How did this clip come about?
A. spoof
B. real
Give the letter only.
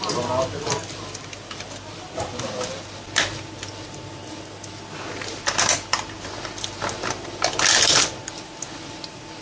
B